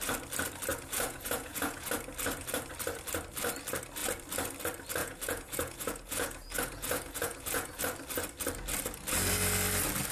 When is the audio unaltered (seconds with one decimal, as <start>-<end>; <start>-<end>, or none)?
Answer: 0.0-0.7; 1.9-5.0; 7.8-10.1